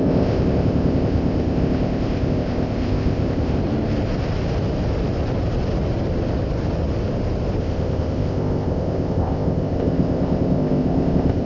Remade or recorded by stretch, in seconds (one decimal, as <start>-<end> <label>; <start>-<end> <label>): 0.0-3.6 remade; 3.6-7.6 recorded; 7.6-11.5 remade